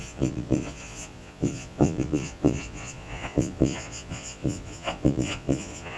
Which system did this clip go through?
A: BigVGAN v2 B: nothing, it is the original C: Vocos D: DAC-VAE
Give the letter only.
C